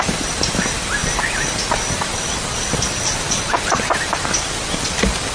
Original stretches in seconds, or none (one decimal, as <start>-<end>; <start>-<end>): 0.0-5.3